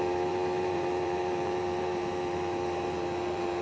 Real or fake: fake